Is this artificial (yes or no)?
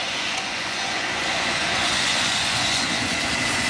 yes